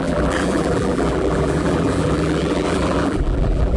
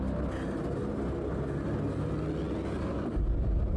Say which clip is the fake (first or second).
first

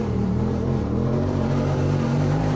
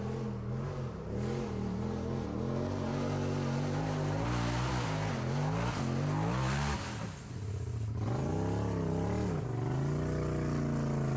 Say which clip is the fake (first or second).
first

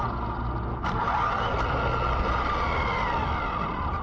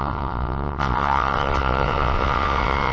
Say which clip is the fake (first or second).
second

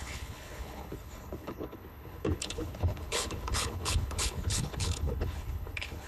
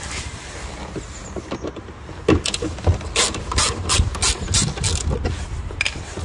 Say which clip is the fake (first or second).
first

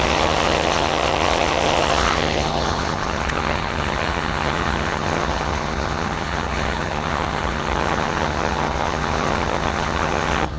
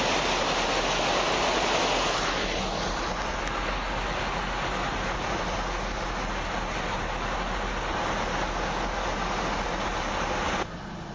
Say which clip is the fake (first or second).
first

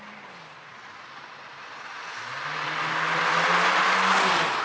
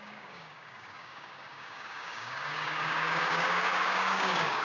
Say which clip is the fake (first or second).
second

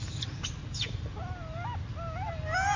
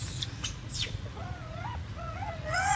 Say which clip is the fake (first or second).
second